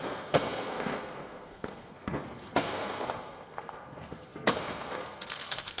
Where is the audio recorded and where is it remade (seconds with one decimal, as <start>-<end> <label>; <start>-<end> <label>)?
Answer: 0.0-5.8 remade